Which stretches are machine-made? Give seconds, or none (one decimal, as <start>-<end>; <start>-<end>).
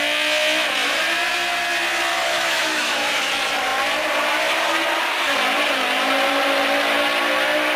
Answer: 2.1-3.3